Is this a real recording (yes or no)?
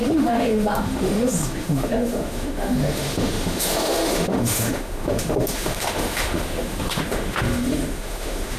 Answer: no